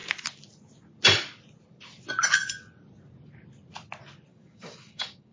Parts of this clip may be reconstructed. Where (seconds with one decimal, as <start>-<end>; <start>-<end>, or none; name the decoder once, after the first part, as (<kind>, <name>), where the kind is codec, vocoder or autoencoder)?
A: 4.3-5.3 (codec, DAC)